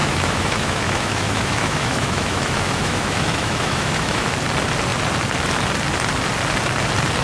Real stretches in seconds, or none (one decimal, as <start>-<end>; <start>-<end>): 4.3-7.2